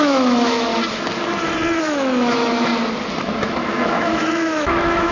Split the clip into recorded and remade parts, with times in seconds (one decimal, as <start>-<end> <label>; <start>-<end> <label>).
0.0-0.7 remade; 0.7-1.8 recorded; 1.8-2.7 remade; 2.7-3.2 recorded; 3.2-5.1 remade